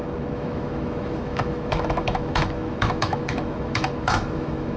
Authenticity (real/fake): fake